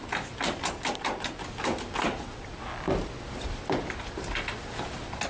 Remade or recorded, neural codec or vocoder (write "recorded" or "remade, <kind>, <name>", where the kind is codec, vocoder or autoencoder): recorded